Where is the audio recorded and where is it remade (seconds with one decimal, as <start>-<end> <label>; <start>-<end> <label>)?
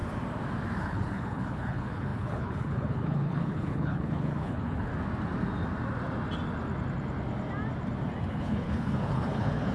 0.0-0.8 recorded; 0.8-4.9 remade; 4.9-8.3 recorded; 8.3-9.7 remade